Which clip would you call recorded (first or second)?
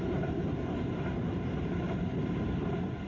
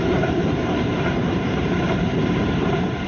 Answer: first